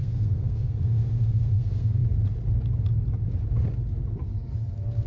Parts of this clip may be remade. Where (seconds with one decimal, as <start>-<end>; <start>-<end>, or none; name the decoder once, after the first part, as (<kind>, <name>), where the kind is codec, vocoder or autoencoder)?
0.0-2.0 (codec, SNAC)